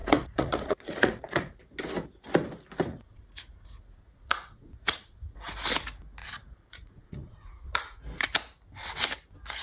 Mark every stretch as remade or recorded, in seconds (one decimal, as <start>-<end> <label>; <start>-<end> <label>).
0.0-1.6 remade; 1.6-2.9 recorded; 2.9-5.3 remade; 5.3-6.2 recorded; 6.2-8.0 remade; 8.0-9.6 recorded